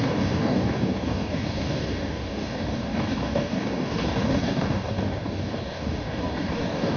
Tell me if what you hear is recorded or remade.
remade